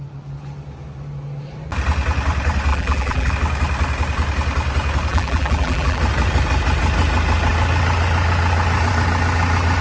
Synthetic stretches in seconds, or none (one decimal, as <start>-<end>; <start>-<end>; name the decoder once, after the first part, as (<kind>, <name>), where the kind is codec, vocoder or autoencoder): 2.7-3.3 (vocoder, BigVGAN v2); 5.1-6.0